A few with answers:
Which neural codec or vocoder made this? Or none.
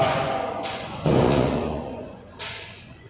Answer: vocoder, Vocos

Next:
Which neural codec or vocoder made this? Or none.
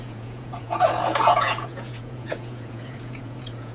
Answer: vocoder, Vocos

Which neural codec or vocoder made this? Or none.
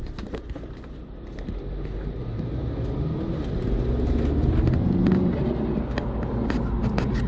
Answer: none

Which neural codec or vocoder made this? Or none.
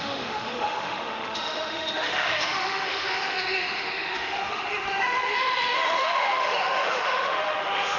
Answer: autoencoder, DAC-VAE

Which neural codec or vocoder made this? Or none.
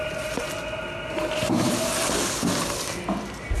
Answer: none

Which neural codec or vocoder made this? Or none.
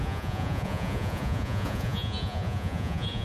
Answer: vocoder, Vocos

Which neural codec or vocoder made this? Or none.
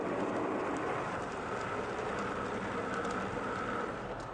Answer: none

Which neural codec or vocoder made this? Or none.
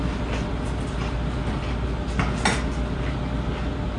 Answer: none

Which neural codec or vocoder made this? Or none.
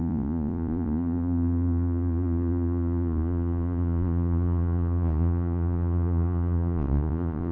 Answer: vocoder, Vocos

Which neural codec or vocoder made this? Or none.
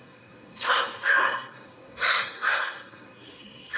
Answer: codec, SNAC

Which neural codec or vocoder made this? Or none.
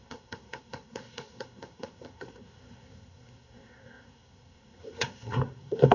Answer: codec, SNAC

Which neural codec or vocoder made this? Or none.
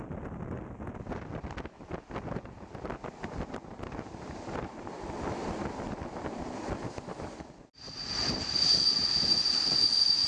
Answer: none